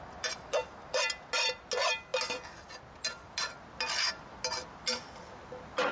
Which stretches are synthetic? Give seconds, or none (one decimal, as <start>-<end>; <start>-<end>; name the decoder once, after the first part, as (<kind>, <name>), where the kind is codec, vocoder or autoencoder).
none

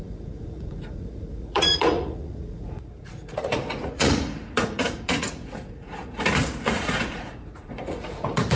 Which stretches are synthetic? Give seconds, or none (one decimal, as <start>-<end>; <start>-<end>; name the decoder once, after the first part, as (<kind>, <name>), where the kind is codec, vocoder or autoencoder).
0.0-8.6 (vocoder, Vocos)

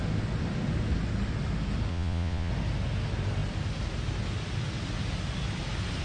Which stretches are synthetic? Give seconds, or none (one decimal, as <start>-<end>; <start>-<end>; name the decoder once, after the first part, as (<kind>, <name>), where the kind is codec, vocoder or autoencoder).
1.9-2.5 (vocoder, Vocos)

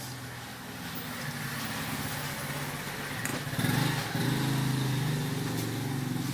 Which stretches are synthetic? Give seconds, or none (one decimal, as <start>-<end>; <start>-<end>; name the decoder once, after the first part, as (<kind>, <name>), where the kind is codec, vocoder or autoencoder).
none